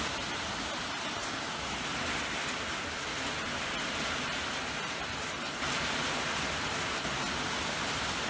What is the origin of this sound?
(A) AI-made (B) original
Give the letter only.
B